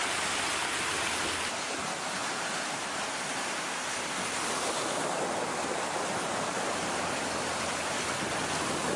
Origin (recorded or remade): recorded